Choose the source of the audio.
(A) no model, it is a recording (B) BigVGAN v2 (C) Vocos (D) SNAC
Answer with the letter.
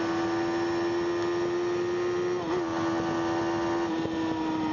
A